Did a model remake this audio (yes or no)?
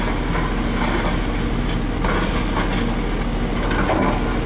no